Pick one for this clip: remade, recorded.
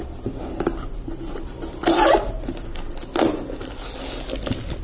recorded